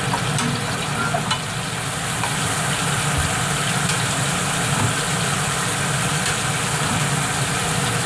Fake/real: real